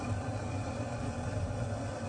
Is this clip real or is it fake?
real